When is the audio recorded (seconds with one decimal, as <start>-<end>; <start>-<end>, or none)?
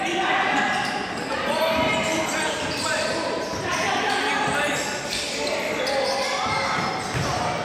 0.0-2.1; 5.8-7.6